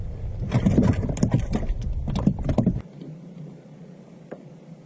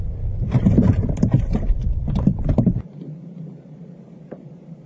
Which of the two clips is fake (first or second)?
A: second